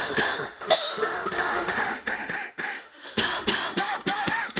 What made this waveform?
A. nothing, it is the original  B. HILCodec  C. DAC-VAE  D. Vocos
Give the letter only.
C